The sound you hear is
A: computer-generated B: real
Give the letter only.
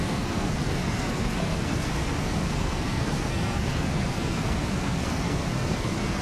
A